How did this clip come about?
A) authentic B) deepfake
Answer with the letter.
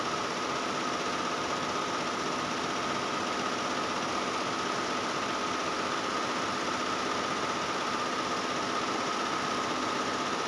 A